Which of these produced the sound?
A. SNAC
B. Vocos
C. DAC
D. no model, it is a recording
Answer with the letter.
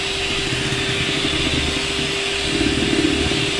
D